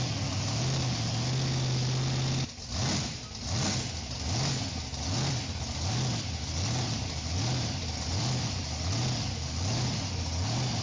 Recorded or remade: recorded